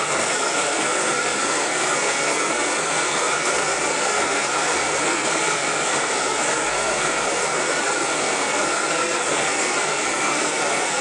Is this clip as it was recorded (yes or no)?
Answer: no